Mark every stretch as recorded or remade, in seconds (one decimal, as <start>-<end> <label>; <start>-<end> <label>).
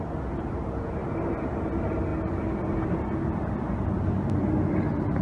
0.0-5.2 recorded